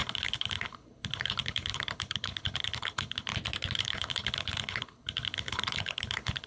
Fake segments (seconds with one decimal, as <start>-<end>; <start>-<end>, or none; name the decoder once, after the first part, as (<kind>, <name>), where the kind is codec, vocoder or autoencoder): 0.0-3.3 (codec, HILCodec); 3.8-6.5